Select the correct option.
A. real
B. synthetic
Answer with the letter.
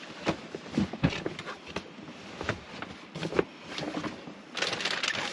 A